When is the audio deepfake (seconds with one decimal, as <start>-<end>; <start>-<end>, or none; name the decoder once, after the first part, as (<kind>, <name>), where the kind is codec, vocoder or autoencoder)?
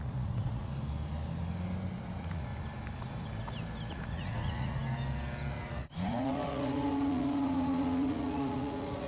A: 0.0-0.7 (vocoder, Vocos); 2.1-2.5; 3.9-4.8; 5.5-9.1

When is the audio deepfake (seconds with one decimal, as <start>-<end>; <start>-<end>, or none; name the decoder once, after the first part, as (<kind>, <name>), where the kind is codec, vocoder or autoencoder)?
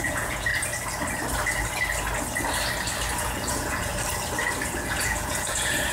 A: 0.0-0.5 (vocoder, Vocos); 3.2-3.9; 4.7-5.9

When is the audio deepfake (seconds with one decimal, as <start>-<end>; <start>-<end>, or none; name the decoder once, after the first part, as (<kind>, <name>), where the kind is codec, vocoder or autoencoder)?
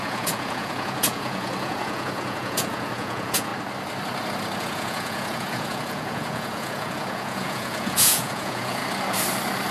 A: 0.0-3.5 (vocoder, Vocos); 4.6-8.8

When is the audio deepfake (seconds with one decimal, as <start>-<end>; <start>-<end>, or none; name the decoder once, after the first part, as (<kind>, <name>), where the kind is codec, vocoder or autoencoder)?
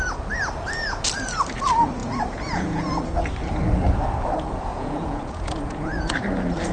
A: 2.0-2.9 (vocoder, Vocos); 4.7-6.2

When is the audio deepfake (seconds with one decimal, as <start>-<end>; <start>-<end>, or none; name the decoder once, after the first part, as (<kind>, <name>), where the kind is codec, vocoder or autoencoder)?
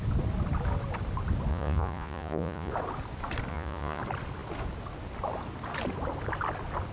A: 1.5-2.7 (vocoder, Vocos); 3.5-4.0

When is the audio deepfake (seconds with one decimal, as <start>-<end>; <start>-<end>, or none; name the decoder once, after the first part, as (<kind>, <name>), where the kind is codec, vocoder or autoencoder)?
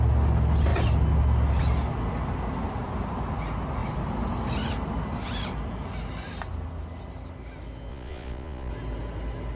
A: 7.9-8.7 (vocoder, Vocos)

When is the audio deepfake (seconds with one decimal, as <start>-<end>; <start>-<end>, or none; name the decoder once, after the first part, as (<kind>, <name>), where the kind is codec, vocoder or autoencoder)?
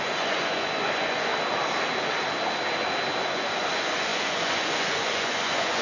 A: 0.0-1.3 (vocoder, Vocos); 3.3-5.8